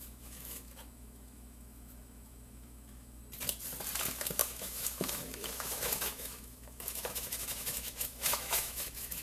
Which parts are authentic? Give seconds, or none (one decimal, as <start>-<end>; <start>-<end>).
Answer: 3.2-4.0